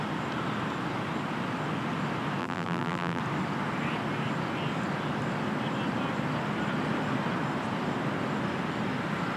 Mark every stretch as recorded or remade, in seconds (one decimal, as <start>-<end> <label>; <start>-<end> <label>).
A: 0.0-2.4 recorded; 2.4-3.2 remade; 3.2-9.4 recorded